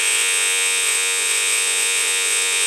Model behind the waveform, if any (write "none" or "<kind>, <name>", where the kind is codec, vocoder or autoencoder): vocoder, Vocos